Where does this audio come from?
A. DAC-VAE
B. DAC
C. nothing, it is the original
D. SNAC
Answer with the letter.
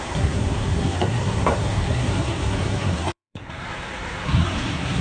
D